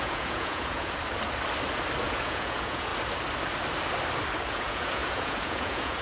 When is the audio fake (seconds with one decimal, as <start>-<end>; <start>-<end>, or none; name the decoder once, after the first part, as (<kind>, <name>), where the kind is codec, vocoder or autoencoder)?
0.0-1.0 (vocoder, Vocos); 2.0-2.9; 4.5-6.0